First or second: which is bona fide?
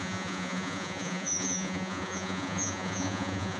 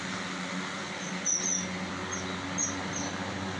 second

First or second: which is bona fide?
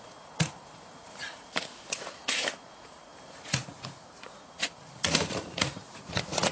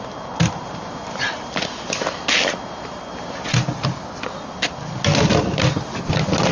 second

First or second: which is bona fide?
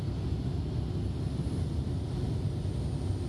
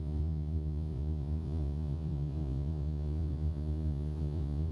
first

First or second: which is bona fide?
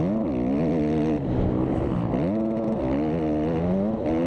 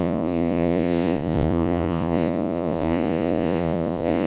first